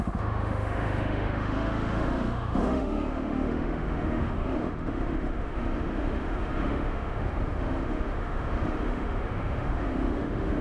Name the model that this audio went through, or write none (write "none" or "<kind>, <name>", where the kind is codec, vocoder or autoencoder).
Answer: autoencoder, DAC-VAE